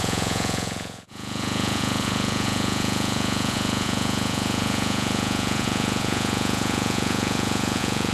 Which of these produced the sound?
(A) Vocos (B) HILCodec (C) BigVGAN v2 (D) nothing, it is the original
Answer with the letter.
A